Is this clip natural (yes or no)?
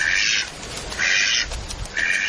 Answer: yes